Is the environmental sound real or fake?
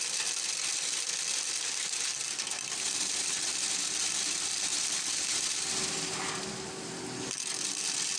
real